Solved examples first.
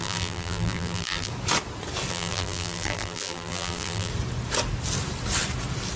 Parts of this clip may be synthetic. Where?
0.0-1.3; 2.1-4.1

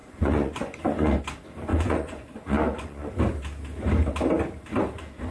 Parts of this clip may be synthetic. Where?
0.0-1.2; 1.7-3.1

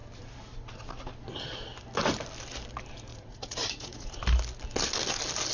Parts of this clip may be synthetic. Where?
3.1-4.2

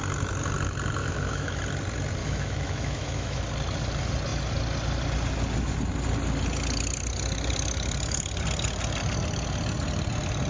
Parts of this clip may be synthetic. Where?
1.0-1.6; 2.2-3.4

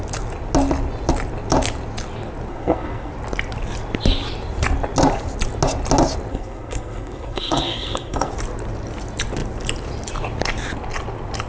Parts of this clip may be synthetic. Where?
2.5-3.1; 6.3-8.3